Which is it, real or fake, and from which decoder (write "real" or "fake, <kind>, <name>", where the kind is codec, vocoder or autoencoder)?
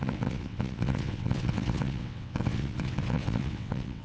fake, vocoder, WaveNeXt